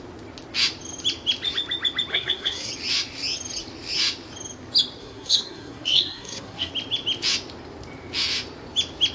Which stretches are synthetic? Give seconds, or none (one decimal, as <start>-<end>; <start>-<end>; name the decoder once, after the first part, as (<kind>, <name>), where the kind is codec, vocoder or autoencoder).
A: 2.1-2.7 (codec, SNAC); 5.0-6.7